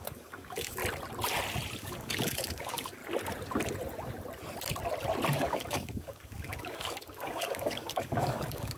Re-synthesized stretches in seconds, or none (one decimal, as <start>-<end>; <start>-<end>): 0.0-0.8; 1.8-3.0; 5.3-8.8